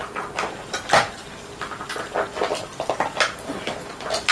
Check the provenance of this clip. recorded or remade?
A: recorded